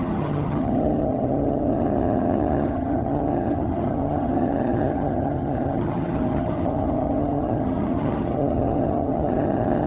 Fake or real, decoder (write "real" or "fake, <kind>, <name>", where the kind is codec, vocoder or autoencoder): fake, vocoder, HiFi-GAN